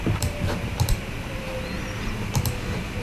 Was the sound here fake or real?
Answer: fake